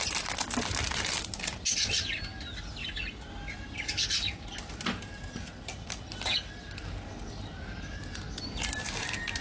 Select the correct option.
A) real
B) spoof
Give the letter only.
A